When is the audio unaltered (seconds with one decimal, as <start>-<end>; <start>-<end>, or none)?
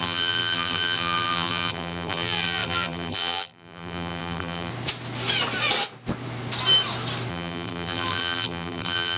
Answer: 4.7-7.3